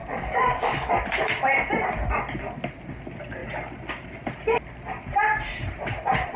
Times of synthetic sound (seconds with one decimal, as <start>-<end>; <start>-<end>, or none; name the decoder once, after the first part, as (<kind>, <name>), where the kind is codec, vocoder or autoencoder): 0.0-0.9 (codec, DAC)